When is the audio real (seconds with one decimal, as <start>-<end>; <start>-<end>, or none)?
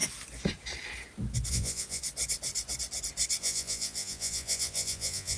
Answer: 0.0-1.5; 2.0-3.4